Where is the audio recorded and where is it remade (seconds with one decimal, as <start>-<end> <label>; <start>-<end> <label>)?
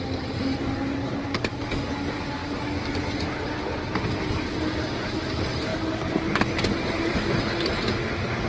0.0-8.5 recorded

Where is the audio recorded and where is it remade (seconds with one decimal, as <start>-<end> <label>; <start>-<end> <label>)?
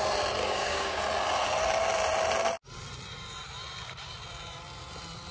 0.0-0.4 recorded; 0.4-1.0 remade; 1.0-5.3 recorded